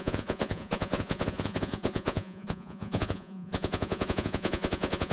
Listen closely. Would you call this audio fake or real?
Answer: fake